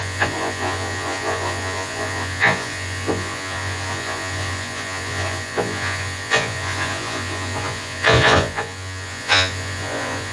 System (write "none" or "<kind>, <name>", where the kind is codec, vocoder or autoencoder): vocoder, Vocos